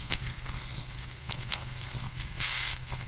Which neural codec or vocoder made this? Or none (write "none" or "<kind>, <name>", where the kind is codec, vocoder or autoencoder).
codec, SNAC